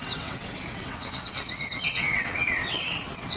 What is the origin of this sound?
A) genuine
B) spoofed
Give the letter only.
B